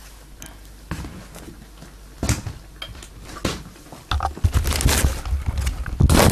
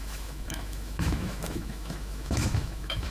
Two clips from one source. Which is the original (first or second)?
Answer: first